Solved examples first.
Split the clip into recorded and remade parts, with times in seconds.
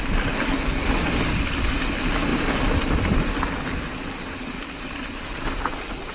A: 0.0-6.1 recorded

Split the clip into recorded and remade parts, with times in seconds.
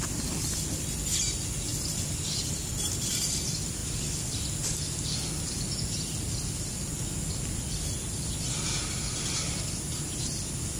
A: 0.0-3.8 remade; 3.8-7.3 recorded; 7.3-10.8 remade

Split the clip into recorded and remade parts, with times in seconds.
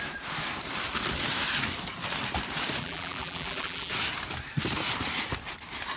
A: 0.0-2.8 recorded; 2.8-3.9 remade; 3.9-6.0 recorded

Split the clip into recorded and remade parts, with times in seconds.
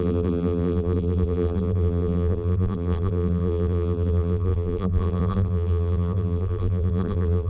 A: 0.0-7.5 remade